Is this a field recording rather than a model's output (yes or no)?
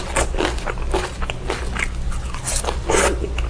yes